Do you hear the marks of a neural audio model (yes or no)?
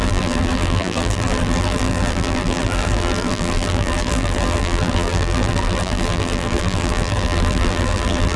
yes